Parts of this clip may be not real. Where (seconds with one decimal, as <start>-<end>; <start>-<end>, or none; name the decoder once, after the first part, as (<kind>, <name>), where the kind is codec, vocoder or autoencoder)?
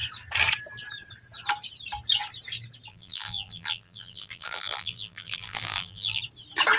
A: 2.9-6.2 (vocoder, BigVGAN v2)